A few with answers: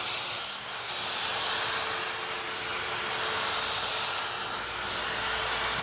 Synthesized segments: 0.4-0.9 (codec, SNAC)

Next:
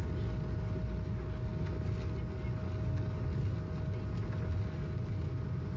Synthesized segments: none

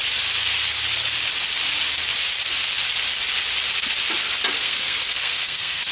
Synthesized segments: 4.6-5.9 (codec, SNAC)

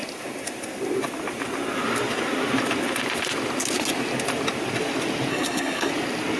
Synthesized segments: 5.3-5.9 (codec, SNAC)